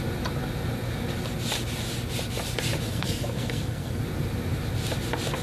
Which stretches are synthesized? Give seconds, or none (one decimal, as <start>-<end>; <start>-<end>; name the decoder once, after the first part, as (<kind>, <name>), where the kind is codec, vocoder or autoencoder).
2.9-4.0 (codec, SNAC)